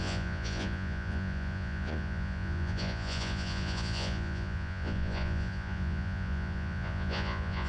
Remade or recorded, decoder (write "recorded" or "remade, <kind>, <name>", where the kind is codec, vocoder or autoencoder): remade, vocoder, Vocos